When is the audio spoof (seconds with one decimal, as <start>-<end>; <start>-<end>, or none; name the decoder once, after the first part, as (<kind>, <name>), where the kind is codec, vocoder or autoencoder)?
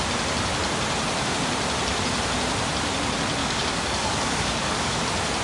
3.4-5.0 (codec, DAC)